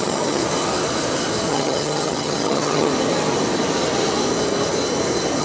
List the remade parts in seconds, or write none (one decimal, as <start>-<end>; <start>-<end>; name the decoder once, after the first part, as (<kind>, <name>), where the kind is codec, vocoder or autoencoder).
0.0-0.4 (vocoder, HiFi-GAN); 1.5-2.9